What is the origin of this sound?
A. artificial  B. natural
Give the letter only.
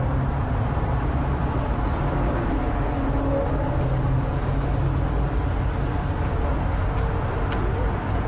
B